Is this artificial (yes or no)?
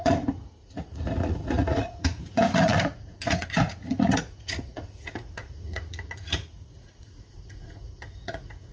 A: yes